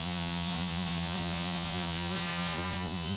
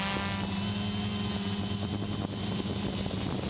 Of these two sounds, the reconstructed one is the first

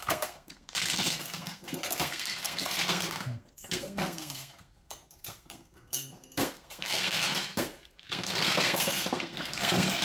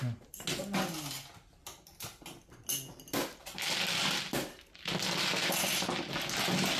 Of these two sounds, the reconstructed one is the first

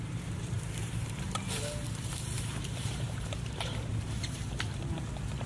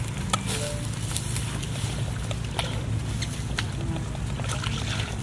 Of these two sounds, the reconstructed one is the first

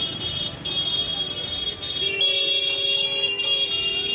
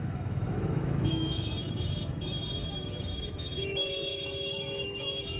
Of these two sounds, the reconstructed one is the second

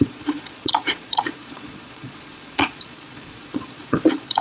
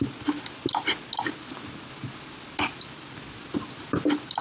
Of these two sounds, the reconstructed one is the first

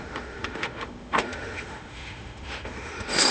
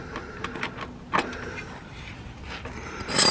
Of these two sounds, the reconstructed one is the first